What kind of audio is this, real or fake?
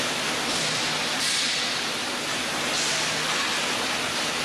real